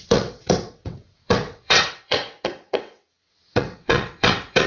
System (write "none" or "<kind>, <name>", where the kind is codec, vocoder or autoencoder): vocoder, WaveNeXt